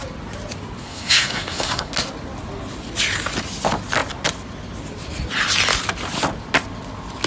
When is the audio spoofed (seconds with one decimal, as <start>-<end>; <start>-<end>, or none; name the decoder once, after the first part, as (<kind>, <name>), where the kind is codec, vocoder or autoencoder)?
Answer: 0.8-1.9 (codec, SNAC)